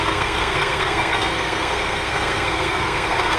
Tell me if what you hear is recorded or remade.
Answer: remade